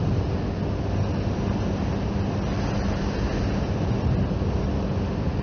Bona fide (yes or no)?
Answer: yes